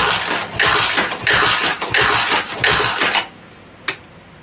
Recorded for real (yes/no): yes